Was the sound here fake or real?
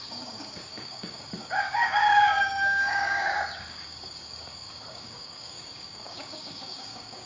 fake